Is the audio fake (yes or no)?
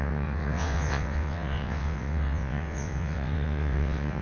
yes